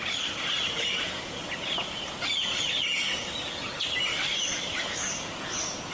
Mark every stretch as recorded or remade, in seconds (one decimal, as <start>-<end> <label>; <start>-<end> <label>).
0.0-4.1 recorded; 4.1-5.1 remade; 5.1-5.9 recorded